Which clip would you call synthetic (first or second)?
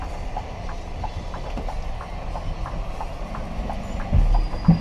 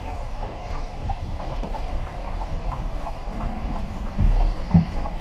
second